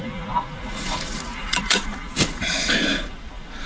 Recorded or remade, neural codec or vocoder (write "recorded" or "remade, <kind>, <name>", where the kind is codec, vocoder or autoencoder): remade, vocoder, Vocos